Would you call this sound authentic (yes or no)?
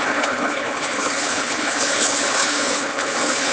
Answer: no